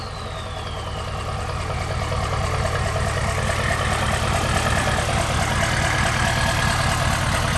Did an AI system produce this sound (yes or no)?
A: no